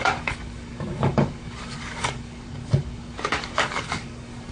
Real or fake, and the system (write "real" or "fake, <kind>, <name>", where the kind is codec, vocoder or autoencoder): fake, codec, DAC